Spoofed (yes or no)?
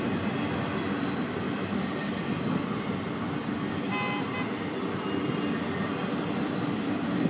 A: no